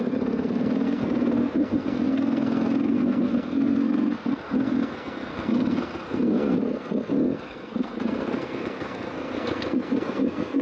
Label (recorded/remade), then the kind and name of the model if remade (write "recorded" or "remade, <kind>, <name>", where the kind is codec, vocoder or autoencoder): remade, codec, SNAC